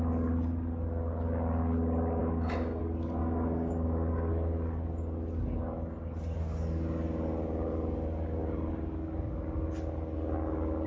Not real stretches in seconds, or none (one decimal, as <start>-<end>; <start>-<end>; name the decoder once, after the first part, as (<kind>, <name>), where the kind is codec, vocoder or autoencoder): 2.2-2.8 (codec, DAC); 3.2-4.3